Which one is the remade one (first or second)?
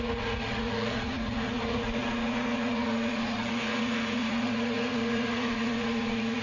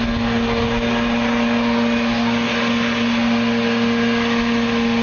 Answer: first